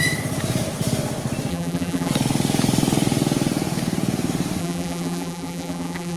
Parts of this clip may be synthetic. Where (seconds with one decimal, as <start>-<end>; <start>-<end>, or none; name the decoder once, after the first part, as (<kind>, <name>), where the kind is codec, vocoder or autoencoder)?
1.5-2.1 (vocoder, BigVGAN v2); 4.6-6.2